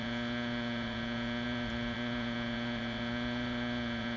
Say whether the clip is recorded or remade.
remade